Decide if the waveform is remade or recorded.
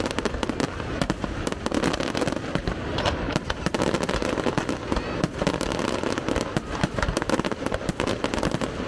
recorded